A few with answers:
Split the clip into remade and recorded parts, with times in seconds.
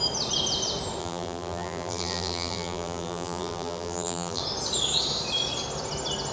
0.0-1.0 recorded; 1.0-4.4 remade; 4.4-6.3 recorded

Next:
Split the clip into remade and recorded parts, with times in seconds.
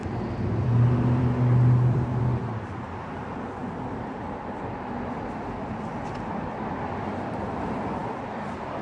0.0-2.2 remade; 2.2-5.9 recorded; 5.9-6.5 remade; 6.5-8.8 recorded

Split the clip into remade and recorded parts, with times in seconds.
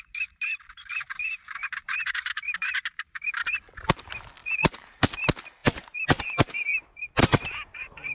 0.0-0.9 recorded; 0.9-3.3 remade; 3.3-4.4 recorded; 4.4-5.0 remade; 5.0-8.1 recorded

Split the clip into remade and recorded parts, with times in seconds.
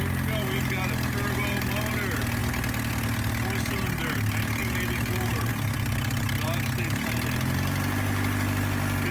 0.0-4.6 recorded; 4.6-5.5 remade; 5.5-9.1 recorded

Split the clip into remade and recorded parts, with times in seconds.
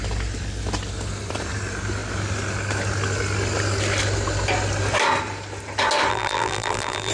0.0-6.1 recorded; 6.1-7.1 remade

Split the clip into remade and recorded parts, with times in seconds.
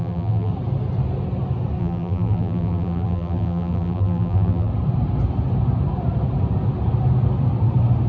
0.0-0.5 remade; 0.5-1.8 recorded; 1.8-4.7 remade; 4.7-8.1 recorded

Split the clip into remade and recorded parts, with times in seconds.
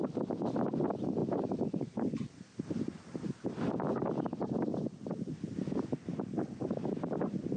0.0-1.2 recorded; 1.2-3.2 remade; 3.2-7.6 recorded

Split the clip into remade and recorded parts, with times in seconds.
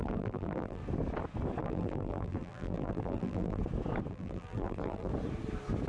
0.0-0.8 remade; 0.8-1.6 recorded; 1.6-3.6 remade; 3.6-4.1 recorded; 4.1-5.1 remade; 5.1-5.9 recorded